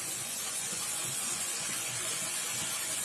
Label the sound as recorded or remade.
remade